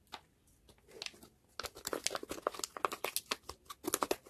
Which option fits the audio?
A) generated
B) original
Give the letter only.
B